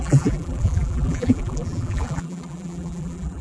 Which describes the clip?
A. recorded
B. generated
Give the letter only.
B